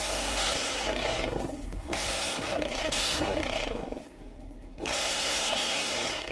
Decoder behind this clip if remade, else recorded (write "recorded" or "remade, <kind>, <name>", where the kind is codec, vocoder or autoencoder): remade, codec, SNAC